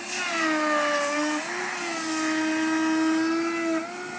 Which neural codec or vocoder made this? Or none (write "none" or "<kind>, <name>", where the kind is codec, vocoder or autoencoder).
none